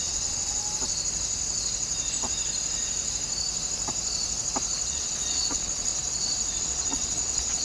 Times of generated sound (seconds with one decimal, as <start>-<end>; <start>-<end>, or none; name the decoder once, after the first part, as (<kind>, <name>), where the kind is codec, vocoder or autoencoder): 0.0-0.6 (vocoder, Vocos); 4.9-5.9; 6.6-7.6